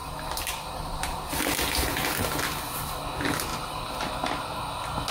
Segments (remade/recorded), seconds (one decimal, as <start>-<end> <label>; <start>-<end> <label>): 0.0-1.3 remade; 1.3-3.5 recorded; 3.5-4.0 remade; 4.0-5.1 recorded